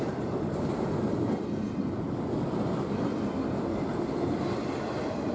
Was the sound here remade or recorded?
recorded